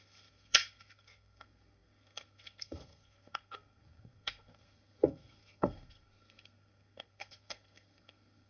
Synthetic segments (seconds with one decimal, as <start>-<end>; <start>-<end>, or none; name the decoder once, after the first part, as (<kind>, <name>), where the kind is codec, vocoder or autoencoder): 0.0-8.5 (codec, SNAC)